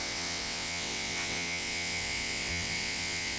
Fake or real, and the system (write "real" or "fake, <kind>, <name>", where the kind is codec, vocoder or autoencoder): fake, vocoder, WaveNeXt